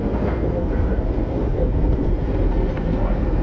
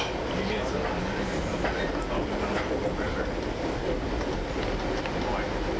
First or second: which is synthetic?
first